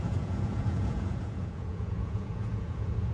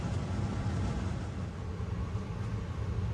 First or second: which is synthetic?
first